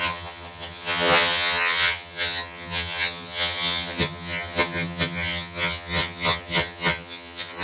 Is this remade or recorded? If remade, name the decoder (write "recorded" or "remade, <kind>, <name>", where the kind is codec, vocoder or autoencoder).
remade, vocoder, HiFi-GAN